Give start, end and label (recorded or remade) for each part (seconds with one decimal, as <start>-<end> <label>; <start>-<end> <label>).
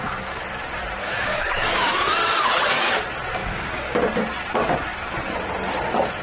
0.0-1.0 recorded; 1.0-2.1 remade; 2.1-3.4 recorded; 3.4-4.0 remade; 4.0-6.2 recorded